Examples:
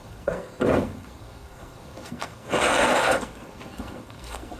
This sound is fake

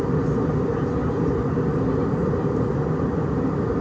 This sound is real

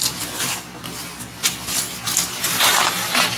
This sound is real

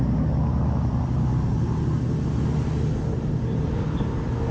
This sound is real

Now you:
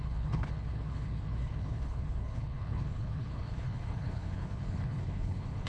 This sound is fake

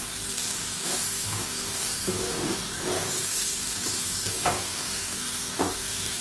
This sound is fake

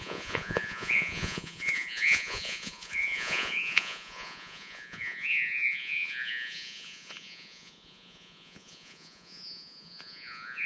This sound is fake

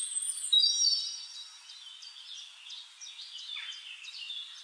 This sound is real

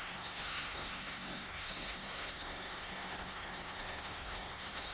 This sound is fake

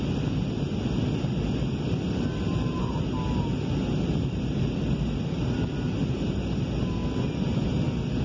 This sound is real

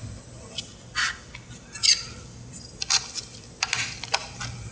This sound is real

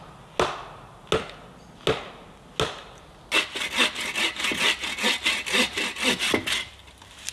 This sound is real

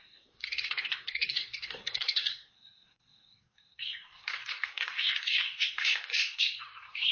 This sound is fake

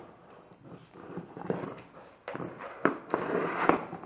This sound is real